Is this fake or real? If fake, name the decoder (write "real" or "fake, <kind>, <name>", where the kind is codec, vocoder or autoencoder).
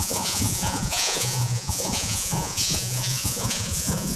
fake, vocoder, Vocos